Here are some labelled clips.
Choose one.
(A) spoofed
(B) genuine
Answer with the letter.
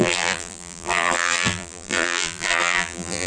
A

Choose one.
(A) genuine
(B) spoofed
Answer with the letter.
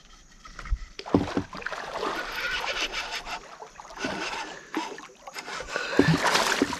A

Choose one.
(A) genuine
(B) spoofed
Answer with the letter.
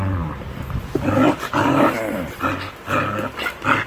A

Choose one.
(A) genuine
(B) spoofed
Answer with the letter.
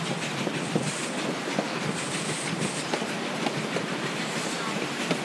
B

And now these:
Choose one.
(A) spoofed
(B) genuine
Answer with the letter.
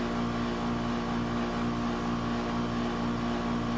B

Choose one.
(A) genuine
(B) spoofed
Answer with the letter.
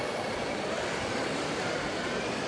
B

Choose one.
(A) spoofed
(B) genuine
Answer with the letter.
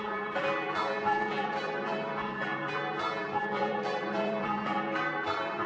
A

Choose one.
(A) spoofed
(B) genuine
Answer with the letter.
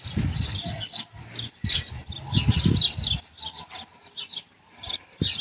B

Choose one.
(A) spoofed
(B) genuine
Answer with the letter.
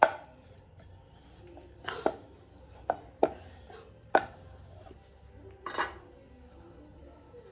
B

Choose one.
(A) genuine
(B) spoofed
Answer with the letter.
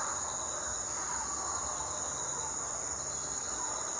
A